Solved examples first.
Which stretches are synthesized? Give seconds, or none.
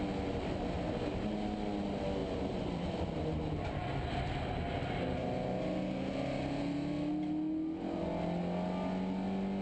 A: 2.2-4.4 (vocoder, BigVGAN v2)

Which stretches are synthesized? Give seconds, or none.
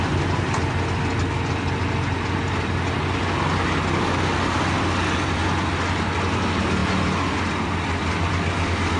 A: none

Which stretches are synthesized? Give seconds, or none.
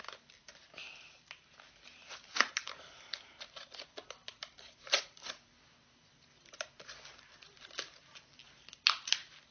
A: none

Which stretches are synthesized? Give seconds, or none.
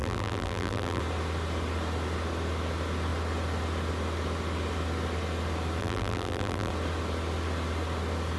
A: 0.0-1.0 (vocoder, BigVGAN v2); 5.8-6.7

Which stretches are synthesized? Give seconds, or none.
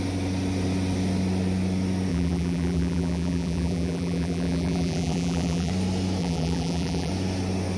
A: 2.1-5.7 (vocoder, BigVGAN v2); 6.2-7.1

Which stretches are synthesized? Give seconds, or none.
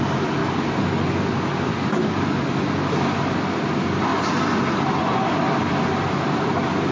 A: 0.0-0.4 (vocoder, BigVGAN v2); 3.2-6.9